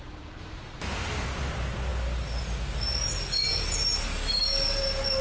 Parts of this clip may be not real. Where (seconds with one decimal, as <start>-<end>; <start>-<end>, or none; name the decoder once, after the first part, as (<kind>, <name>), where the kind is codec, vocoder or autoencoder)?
none